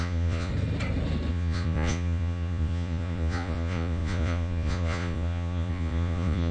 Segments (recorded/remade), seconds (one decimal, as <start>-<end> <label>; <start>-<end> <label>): 0.0-0.5 remade; 0.5-1.3 recorded; 1.3-6.5 remade